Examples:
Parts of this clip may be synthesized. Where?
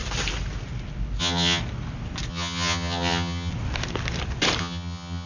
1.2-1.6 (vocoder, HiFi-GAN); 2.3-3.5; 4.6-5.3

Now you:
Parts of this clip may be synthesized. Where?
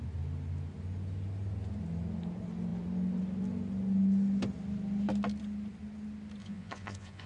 6.4-7.3 (vocoder, Vocos)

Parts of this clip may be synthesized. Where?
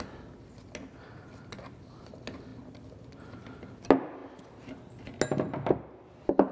none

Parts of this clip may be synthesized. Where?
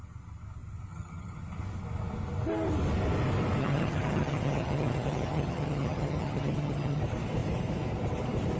0.9-1.4 (vocoder, HiFi-GAN); 3.6-7.0